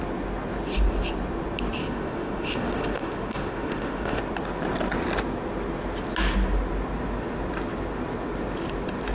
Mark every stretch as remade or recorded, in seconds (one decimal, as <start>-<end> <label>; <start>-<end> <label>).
0.0-1.8 recorded; 1.8-4.2 remade; 4.2-9.1 recorded